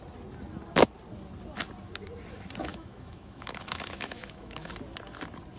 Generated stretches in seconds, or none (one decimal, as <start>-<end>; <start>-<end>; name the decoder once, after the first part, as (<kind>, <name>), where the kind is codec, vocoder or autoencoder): 2.7-4.7 (autoencoder, DAC-VAE)